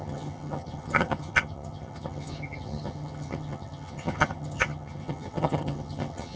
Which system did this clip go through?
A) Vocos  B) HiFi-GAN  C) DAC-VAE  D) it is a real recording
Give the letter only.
B